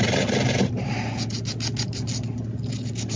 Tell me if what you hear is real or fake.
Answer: real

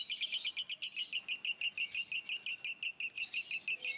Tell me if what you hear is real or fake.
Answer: real